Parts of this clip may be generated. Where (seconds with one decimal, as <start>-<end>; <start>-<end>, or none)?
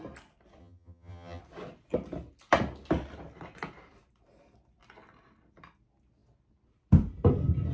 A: 0.6-1.4